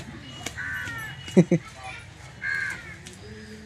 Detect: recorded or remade recorded